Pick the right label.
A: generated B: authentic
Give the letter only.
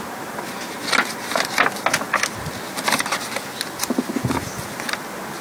B